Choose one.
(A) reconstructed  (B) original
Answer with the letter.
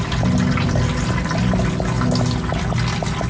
B